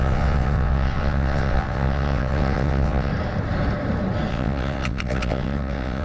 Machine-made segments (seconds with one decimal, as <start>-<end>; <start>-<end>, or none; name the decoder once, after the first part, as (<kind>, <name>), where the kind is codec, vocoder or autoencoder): 0.0-3.1 (vocoder, WaveNeXt); 4.3-6.0